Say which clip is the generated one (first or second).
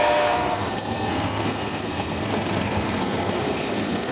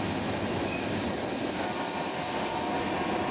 first